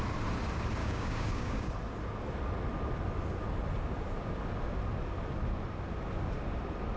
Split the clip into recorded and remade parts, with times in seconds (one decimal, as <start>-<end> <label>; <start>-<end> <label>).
0.0-0.8 recorded; 0.8-1.7 remade; 1.7-7.0 recorded